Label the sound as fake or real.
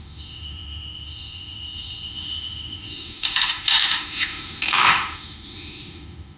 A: fake